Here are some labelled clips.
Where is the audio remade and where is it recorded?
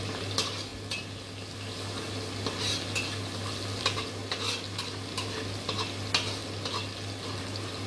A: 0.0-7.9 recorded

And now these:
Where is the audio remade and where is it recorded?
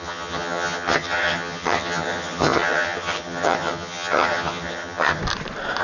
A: 0.0-5.2 remade; 5.2-5.8 recorded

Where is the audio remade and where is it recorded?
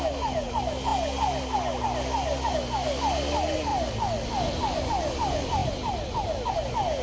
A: 0.0-7.0 recorded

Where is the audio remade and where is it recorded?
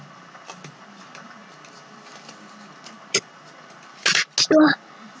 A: 0.0-5.2 recorded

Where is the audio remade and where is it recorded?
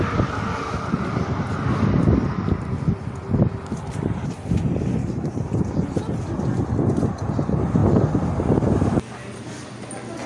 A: 0.0-10.3 recorded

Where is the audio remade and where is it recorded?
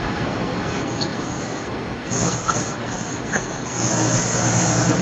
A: 0.0-5.0 remade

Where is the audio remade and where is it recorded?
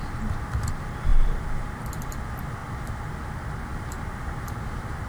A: 0.0-1.1 recorded; 1.1-1.9 remade; 1.9-2.6 recorded; 2.6-3.2 remade; 3.2-3.7 recorded; 3.7-5.1 remade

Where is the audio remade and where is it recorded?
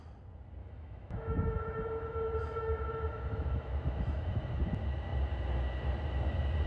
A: 0.0-0.6 recorded; 0.6-4.6 remade; 4.6-6.7 recorded